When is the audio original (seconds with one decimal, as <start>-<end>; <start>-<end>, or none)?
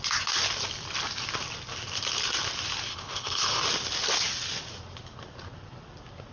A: 0.0-2.9; 3.6-6.3